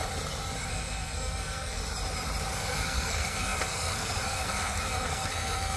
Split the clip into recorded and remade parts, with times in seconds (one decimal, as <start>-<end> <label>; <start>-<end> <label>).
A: 0.0-0.7 recorded; 0.7-1.8 remade; 1.8-2.5 recorded; 2.5-5.8 remade